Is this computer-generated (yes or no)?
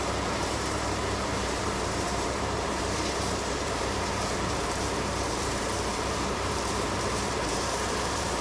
yes